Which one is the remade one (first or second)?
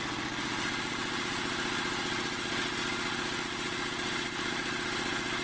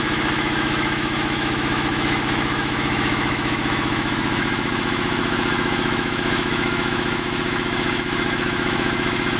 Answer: second